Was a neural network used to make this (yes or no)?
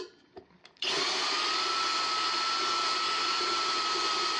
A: no